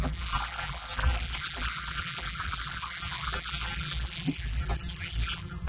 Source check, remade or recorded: remade